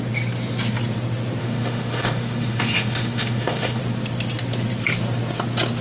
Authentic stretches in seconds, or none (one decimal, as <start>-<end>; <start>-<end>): 0.0-1.4; 3.8-5.8